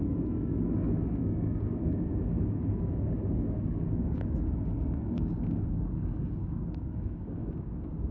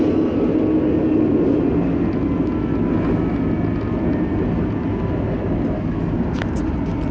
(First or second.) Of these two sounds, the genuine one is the second